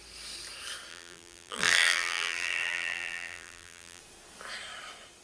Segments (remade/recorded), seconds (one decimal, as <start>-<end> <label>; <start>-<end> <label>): 0.0-0.9 recorded; 0.9-4.0 remade; 4.0-5.2 recorded